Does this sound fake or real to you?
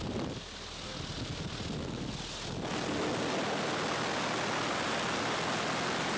real